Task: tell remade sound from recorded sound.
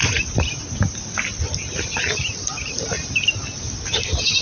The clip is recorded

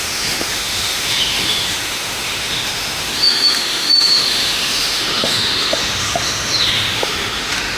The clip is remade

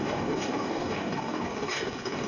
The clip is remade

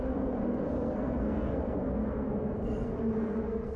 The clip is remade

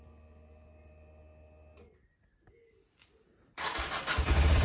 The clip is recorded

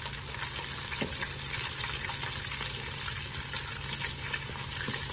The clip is recorded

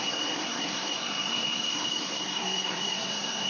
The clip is remade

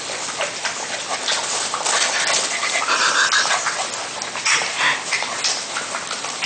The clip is recorded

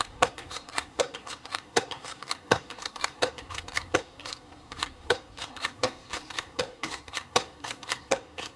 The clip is remade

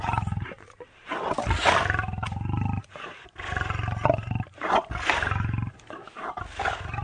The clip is recorded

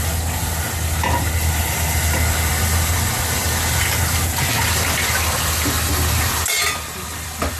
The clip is recorded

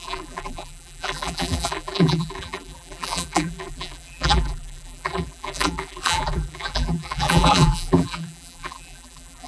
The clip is remade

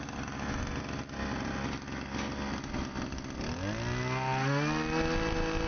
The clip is recorded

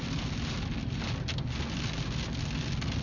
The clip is recorded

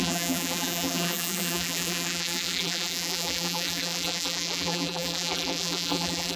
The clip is remade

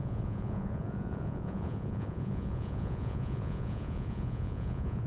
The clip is remade